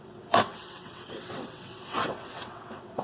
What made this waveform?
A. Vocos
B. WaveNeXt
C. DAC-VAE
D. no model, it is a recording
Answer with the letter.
B